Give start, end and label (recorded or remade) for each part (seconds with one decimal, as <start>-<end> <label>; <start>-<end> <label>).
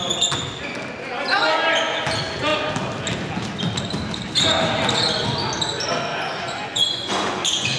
0.0-6.1 recorded; 6.1-7.8 remade